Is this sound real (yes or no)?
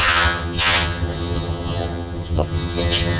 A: no